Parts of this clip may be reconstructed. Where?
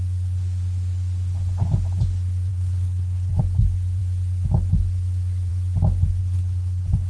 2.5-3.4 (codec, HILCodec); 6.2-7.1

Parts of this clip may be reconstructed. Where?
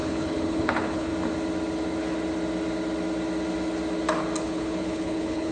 0.0-1.1 (codec, HILCodec); 4.4-5.5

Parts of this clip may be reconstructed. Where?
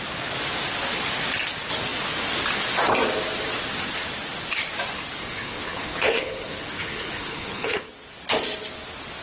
5.2-7.9 (codec, HILCodec)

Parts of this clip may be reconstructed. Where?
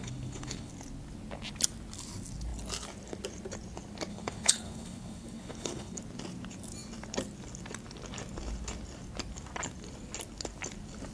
0.0-0.7 (codec, HILCodec); 4.1-6.0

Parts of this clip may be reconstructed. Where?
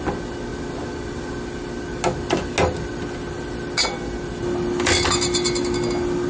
none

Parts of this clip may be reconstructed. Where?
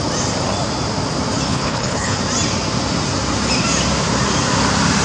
1.5-2.2 (codec, HILCodec)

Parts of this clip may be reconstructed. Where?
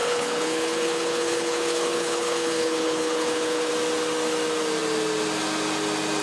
0.0-3.7 (codec, HILCodec)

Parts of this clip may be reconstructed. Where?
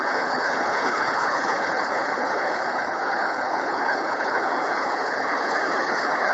0.0-6.3 (codec, HILCodec)